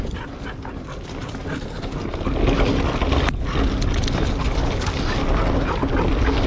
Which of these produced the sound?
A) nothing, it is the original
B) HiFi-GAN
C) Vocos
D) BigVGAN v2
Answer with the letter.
A